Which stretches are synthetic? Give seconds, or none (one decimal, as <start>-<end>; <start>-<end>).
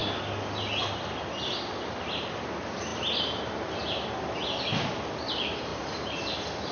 0.8-6.7